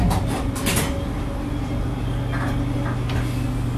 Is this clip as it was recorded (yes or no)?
yes